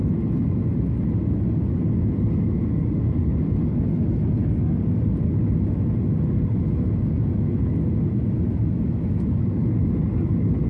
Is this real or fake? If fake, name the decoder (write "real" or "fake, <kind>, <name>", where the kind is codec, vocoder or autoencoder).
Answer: real